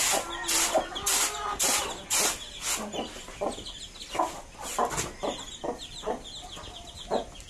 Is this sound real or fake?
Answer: real